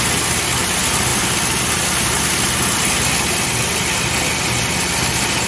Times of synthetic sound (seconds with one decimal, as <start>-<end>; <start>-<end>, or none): none